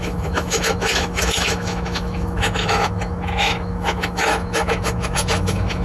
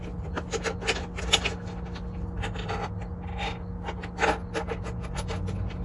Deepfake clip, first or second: first